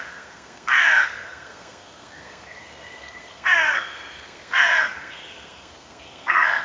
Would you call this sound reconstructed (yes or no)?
yes